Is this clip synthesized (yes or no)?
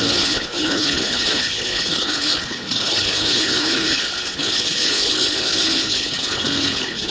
yes